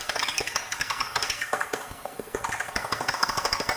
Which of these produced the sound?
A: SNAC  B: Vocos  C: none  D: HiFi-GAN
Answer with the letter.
A